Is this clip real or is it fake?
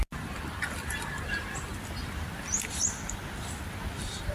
real